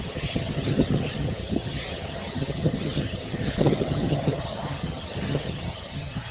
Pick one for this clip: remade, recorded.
remade